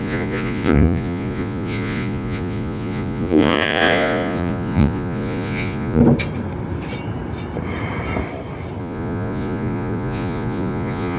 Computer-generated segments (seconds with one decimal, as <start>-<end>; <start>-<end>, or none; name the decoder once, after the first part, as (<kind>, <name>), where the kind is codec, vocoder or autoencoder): 0.0-6.0 (vocoder, Vocos); 8.8-11.2